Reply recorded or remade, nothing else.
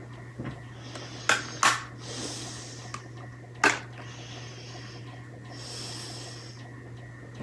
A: recorded